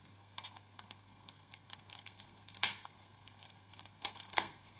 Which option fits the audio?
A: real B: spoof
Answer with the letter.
B